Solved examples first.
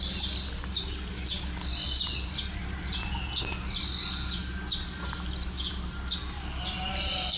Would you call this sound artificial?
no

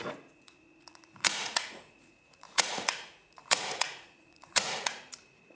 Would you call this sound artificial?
yes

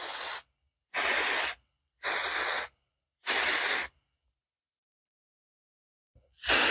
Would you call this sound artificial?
no